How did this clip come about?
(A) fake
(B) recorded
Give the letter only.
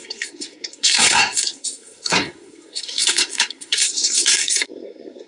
A